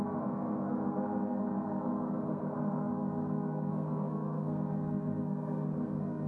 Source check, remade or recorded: remade